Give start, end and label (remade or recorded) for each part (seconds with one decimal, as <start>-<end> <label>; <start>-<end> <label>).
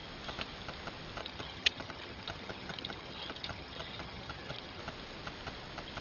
0.0-1.2 recorded; 1.2-4.8 remade; 4.8-6.0 recorded